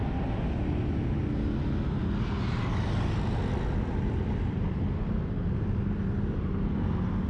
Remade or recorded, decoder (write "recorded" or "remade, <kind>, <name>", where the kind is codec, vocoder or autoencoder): recorded